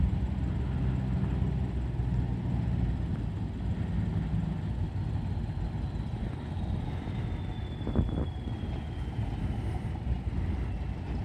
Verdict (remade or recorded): recorded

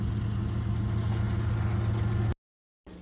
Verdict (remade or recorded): recorded